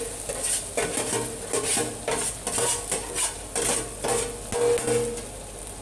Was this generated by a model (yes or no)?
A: no